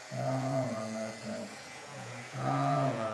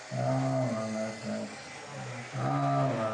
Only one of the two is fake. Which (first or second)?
first